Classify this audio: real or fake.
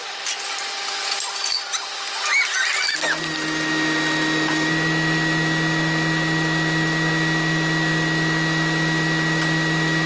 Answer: real